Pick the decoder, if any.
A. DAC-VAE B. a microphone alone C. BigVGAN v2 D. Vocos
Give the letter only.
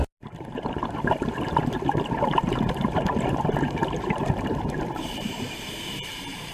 C